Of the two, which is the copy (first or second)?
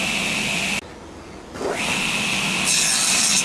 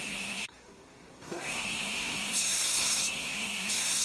second